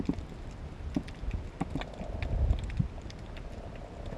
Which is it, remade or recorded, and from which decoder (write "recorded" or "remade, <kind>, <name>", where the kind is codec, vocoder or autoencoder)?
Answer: recorded